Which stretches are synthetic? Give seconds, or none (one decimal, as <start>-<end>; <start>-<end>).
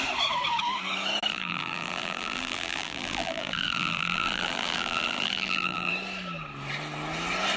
1.3-5.9